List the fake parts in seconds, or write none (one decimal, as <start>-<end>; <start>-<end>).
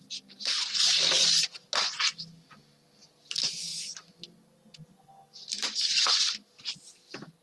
none